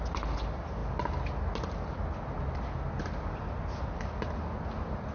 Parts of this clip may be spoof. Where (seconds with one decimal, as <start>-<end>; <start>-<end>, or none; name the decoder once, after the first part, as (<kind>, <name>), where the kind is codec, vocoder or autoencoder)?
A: none